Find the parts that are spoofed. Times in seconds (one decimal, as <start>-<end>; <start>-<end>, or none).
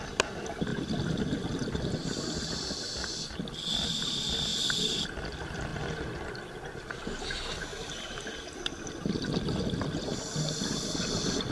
none